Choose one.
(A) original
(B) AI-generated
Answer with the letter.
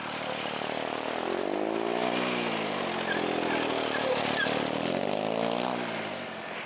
A